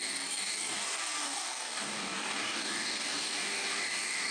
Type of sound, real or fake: fake